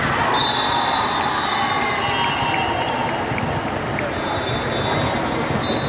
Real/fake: real